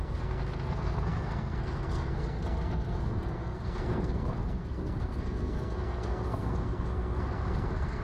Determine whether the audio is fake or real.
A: fake